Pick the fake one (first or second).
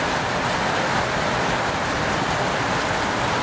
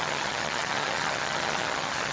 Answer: second